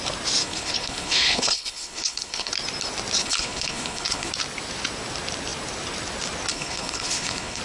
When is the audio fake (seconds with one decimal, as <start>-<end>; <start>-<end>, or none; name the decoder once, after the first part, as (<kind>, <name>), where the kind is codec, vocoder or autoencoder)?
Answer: 0.4-2.5 (codec, HILCodec); 3.2-4.3; 6.5-7.6